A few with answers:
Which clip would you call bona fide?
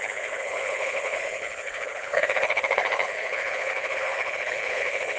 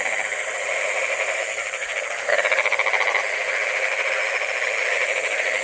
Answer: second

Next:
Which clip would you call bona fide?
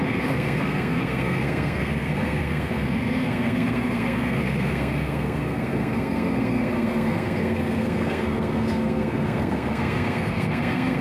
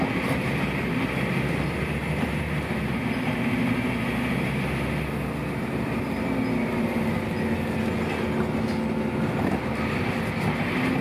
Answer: second